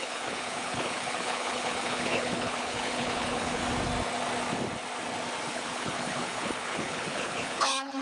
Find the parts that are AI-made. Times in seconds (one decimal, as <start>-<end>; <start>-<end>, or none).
0.0-3.6; 5.5-8.0